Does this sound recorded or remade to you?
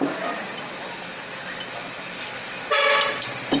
recorded